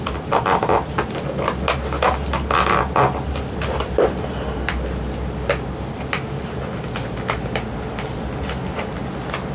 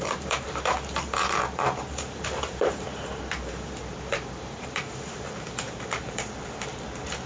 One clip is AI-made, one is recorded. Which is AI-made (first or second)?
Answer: second